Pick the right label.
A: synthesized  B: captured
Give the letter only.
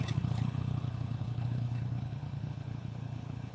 A